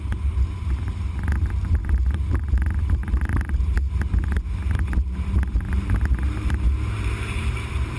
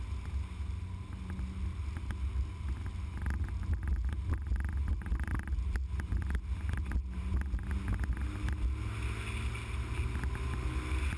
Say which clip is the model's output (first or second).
first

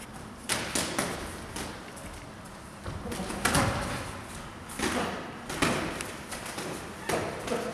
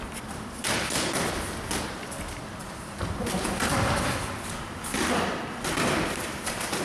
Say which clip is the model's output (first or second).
second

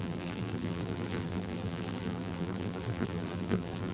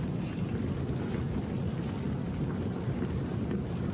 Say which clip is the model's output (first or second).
first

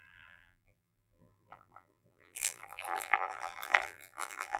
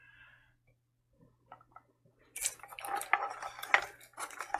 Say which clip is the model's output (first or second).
first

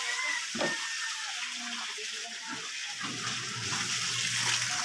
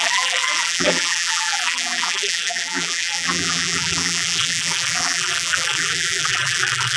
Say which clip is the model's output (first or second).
second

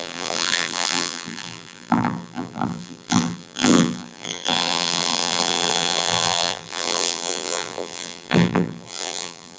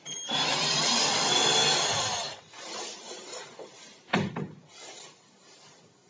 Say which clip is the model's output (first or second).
first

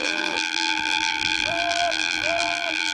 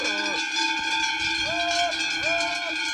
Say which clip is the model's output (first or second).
first